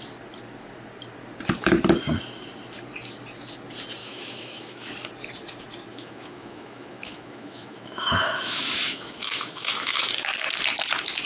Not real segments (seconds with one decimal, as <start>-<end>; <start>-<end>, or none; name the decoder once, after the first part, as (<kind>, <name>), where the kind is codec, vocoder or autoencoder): 4.0-4.9 (autoencoder, DAC-VAE); 5.9-10.0